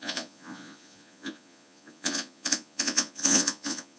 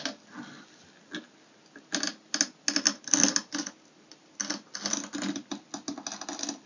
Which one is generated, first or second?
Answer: first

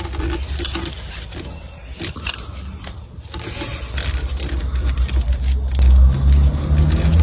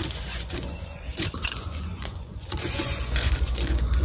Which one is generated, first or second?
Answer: second